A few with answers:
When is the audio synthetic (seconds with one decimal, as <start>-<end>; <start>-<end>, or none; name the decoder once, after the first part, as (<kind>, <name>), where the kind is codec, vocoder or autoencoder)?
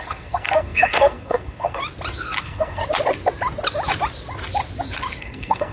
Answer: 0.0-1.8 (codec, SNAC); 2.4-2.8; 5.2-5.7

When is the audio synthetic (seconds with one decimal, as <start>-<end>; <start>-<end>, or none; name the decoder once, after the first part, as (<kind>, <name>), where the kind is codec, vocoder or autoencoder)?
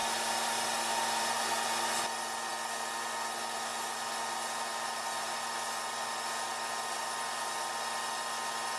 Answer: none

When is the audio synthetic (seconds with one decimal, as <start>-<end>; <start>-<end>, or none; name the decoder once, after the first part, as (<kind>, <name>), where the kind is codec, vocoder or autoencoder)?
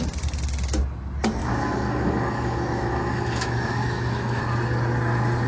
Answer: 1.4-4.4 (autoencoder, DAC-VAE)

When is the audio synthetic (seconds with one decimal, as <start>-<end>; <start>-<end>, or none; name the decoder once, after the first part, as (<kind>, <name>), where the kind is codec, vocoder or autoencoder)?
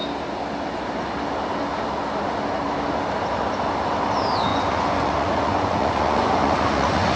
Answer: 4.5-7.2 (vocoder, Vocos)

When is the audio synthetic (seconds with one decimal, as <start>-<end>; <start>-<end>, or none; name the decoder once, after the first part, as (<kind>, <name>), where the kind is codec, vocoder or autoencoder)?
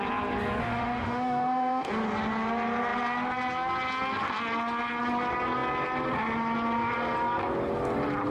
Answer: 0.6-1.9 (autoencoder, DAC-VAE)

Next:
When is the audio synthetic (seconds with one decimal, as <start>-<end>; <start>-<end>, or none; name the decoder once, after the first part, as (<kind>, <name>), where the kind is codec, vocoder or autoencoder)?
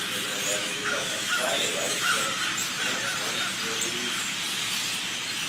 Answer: 0.6-2.1 (autoencoder, DAC-VAE)